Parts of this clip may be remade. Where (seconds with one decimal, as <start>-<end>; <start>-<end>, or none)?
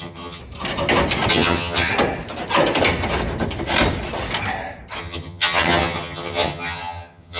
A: 0.0-0.4; 1.3-1.9; 5.0-7.4